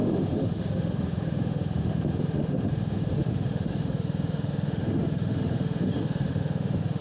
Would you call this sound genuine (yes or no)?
no